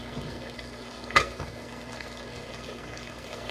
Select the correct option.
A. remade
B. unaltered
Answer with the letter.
A